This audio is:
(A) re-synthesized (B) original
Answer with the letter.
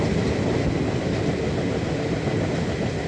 B